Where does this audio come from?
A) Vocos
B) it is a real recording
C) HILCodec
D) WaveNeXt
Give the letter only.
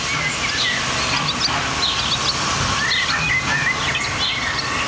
B